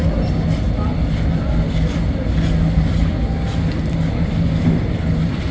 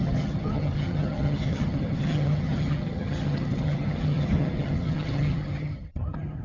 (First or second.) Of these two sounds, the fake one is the second